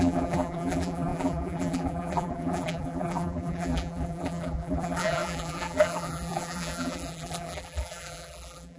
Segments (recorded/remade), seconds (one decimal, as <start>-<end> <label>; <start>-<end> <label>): 0.0-8.8 remade